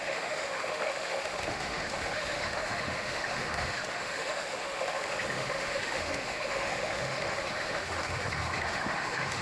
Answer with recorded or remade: remade